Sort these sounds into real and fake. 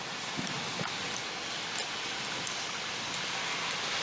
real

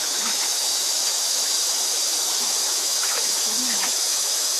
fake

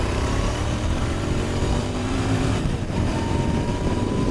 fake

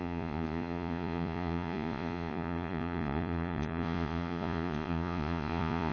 fake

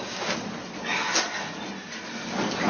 real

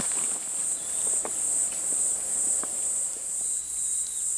fake